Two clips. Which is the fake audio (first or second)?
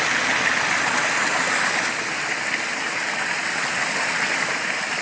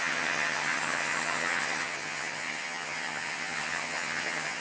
second